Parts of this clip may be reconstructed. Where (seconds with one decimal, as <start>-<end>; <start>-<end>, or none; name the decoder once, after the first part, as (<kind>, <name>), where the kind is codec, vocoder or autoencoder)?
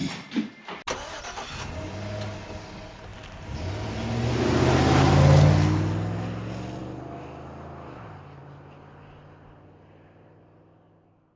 none